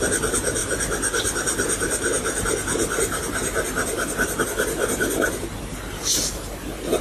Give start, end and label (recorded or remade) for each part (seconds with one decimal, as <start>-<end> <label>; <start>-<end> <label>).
0.0-7.0 recorded

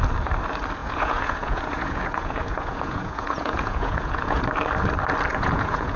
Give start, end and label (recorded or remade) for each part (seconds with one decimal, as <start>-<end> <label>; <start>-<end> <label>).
0.0-0.8 recorded; 0.8-4.4 remade; 4.4-5.3 recorded; 5.3-6.0 remade

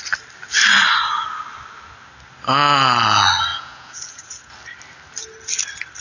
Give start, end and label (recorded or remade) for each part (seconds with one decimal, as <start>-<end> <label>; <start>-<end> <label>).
0.0-3.5 recorded; 3.5-4.5 remade; 4.5-6.0 recorded

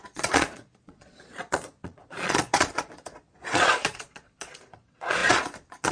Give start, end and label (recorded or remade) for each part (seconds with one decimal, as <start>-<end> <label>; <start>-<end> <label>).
0.0-5.9 remade